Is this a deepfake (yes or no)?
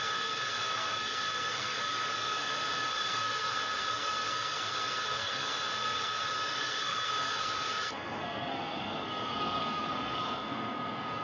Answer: yes